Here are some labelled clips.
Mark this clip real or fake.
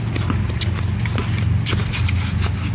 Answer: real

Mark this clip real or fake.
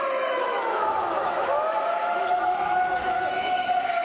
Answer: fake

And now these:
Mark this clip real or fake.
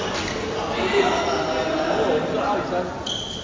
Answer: real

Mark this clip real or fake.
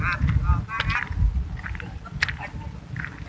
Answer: real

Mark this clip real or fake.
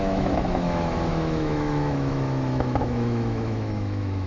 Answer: fake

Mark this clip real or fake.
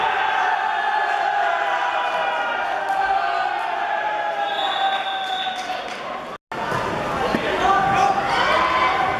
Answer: real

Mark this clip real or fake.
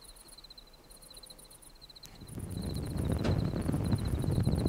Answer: real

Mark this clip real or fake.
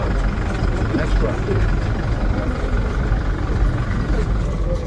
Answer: real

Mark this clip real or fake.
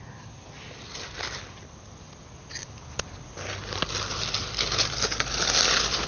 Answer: real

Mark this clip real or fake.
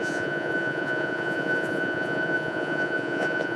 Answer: fake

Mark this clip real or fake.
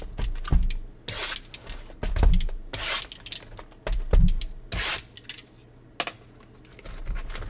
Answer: real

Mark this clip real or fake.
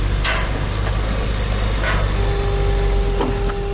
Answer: real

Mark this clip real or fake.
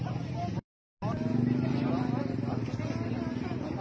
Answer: real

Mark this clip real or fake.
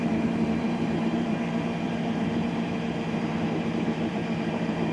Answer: fake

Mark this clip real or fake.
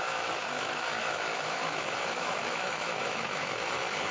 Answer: fake